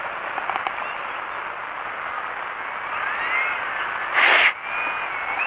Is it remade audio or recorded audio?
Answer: recorded